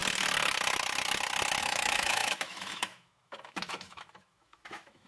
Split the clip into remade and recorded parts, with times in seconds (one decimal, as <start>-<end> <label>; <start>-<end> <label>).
0.0-1.6 recorded; 1.6-5.1 remade